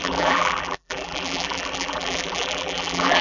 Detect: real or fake fake